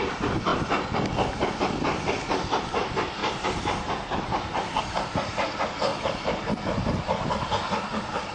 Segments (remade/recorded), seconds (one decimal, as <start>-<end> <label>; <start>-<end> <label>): 0.0-3.2 recorded; 3.2-4.8 remade; 4.8-5.9 recorded; 5.9-6.5 remade; 6.5-8.3 recorded